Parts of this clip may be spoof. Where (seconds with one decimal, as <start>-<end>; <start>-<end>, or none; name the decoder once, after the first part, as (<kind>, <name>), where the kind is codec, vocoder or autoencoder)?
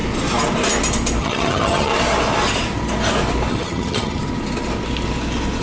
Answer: 1.2-1.9 (vocoder, HiFi-GAN); 3.5-4.2